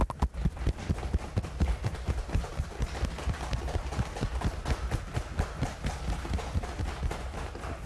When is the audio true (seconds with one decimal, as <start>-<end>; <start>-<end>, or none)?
0.0-7.9